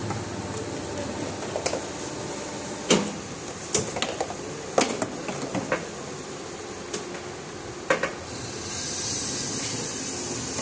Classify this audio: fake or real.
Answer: real